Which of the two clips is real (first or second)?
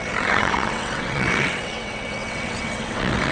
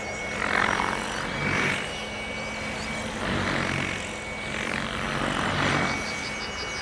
second